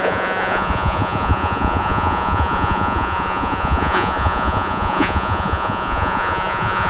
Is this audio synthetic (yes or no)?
yes